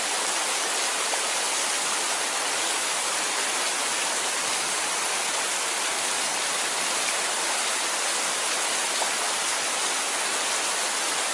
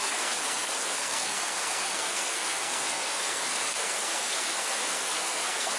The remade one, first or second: second